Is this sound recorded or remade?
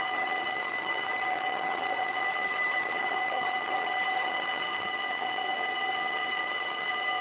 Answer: remade